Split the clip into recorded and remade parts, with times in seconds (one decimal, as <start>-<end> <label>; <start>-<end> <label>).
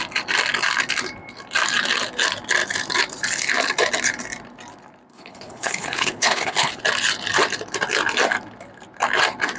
0.0-5.1 recorded; 5.1-6.8 remade; 6.8-9.6 recorded